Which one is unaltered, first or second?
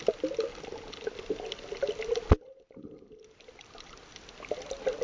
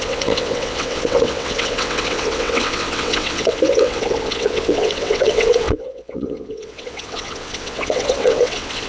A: first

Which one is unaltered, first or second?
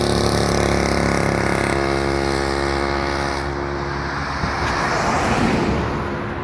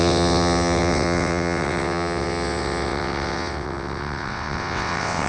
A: first